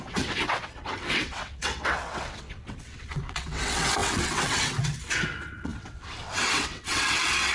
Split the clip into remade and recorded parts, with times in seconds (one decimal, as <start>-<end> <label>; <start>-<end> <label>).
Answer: 0.0-7.5 remade